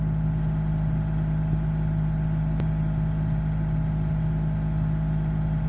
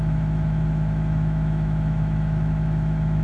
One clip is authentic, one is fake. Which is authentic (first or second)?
first